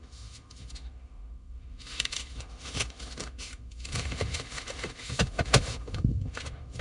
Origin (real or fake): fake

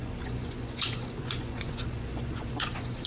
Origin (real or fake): fake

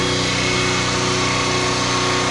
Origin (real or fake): real